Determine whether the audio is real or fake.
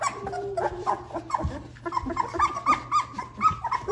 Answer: real